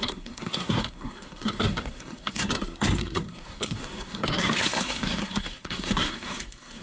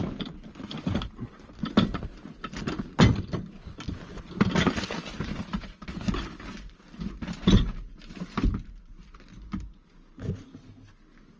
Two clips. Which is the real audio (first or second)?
second